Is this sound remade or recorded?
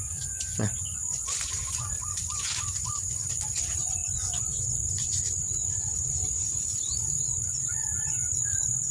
remade